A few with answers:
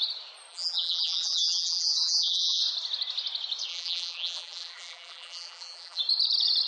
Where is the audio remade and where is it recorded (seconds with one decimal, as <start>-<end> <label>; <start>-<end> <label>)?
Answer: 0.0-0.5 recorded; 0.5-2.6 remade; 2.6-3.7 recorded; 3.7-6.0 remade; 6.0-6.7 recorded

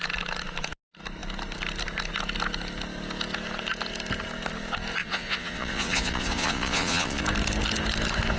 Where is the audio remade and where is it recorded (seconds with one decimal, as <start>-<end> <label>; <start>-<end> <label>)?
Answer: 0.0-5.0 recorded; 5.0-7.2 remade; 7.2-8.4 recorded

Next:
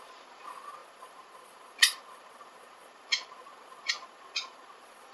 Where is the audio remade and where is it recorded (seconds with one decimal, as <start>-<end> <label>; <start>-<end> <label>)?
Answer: 0.0-5.1 remade

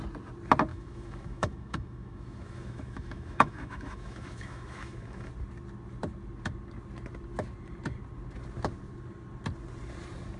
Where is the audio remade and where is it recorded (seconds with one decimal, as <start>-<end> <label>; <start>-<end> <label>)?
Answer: 0.0-0.7 recorded; 0.7-5.3 remade; 5.3-10.4 recorded

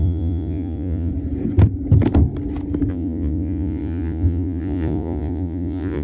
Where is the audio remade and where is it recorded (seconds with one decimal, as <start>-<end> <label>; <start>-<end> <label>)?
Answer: 0.0-1.1 remade; 1.1-2.9 recorded; 2.9-6.0 remade

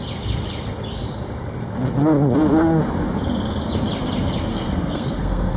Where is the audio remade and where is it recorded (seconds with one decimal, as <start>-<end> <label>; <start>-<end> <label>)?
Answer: 0.0-4.5 recorded; 4.5-5.6 remade

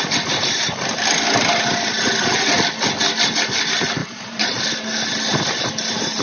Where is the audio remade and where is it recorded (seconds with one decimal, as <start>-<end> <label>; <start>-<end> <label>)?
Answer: 0.0-4.0 recorded; 4.0-4.6 remade; 4.6-6.2 recorded

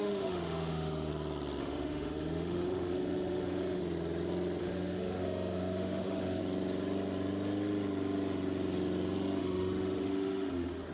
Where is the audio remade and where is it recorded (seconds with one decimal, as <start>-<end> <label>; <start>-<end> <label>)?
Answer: 0.0-1.1 remade; 1.1-1.6 recorded; 1.6-3.8 remade; 3.8-4.6 recorded; 4.6-6.4 remade; 6.4-9.4 recorded; 9.4-10.9 remade